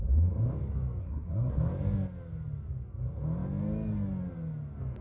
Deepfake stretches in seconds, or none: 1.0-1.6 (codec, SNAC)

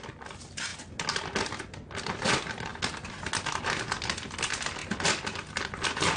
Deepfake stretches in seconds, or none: none

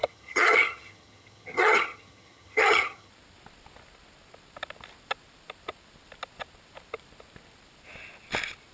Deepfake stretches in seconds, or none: 0.0-3.1 (vocoder, HiFi-GAN)

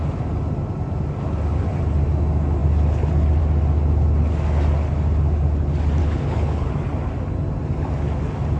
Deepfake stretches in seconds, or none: 6.0-6.7 (codec, HILCodec)

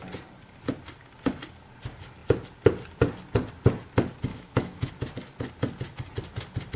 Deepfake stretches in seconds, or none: 4.3-4.9 (autoencoder, DAC-VAE)